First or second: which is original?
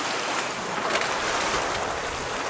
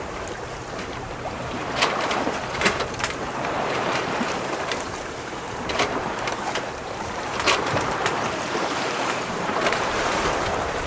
first